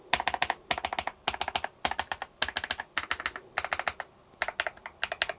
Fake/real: real